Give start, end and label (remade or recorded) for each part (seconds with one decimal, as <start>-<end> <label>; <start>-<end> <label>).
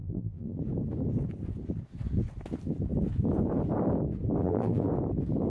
0.0-0.6 remade; 0.6-4.4 recorded; 4.4-4.9 remade; 4.9-5.5 recorded